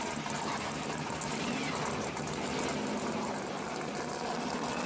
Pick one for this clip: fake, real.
real